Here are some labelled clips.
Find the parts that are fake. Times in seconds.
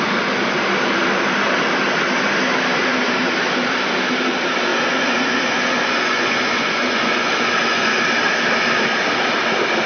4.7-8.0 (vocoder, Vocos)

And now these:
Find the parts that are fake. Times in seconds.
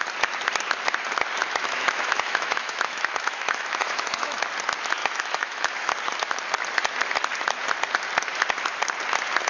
1.4-4.4 (autoencoder, DAC-VAE); 5.0-5.9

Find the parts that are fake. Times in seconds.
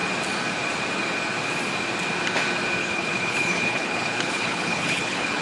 2.8-5.4 (codec, HILCodec)